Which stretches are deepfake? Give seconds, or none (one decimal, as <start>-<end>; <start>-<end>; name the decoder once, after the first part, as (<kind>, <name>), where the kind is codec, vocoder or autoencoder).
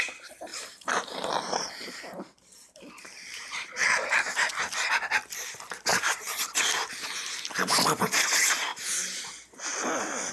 0.5-4.6 (vocoder, BigVGAN v2); 5.9-6.5